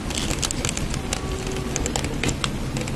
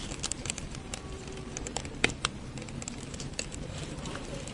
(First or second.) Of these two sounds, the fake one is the second